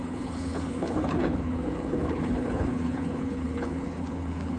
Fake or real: fake